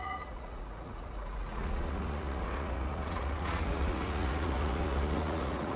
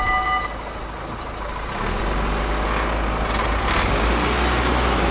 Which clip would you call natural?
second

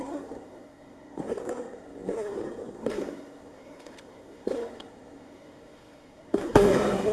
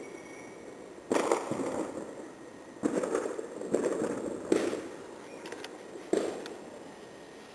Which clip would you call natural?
second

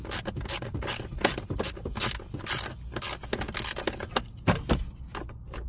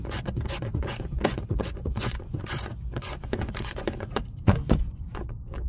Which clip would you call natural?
first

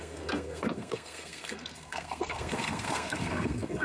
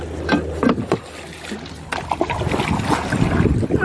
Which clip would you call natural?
second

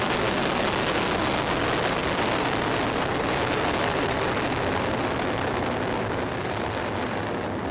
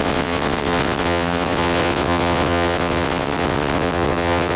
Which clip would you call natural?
first